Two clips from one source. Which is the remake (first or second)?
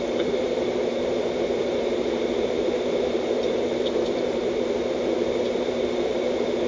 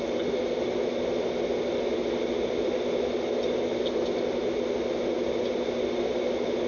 first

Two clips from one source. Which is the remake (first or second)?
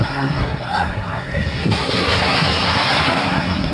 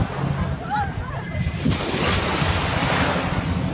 first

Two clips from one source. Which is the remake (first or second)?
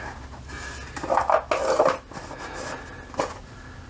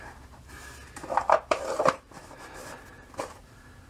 second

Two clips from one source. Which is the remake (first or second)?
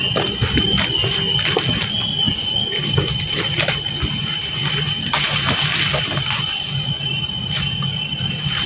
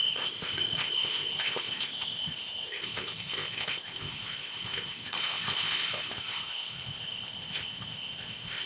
second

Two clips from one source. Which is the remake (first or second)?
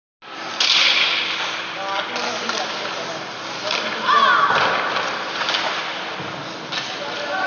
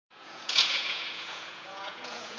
second